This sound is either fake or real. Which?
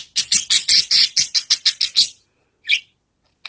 real